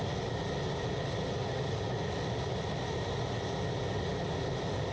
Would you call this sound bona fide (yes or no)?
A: yes